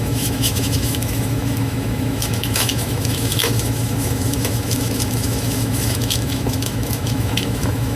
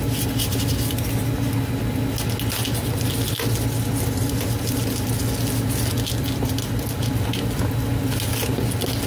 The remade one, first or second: first